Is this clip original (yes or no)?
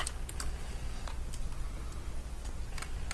yes